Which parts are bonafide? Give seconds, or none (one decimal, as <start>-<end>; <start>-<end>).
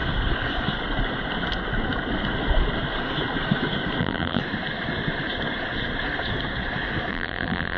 0.0-4.0; 4.4-7.1